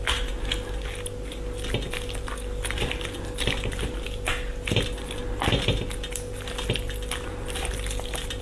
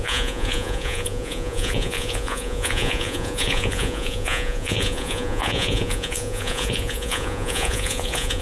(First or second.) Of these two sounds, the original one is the first